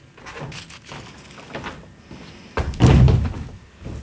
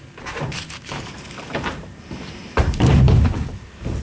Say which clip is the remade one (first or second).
second